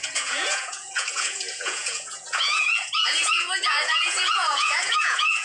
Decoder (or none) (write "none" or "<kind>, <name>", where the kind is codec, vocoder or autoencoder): vocoder, Vocos